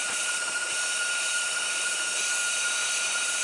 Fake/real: fake